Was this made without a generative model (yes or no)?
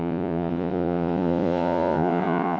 no